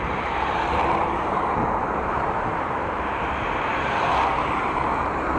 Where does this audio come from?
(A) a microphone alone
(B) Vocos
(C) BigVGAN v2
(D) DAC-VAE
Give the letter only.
C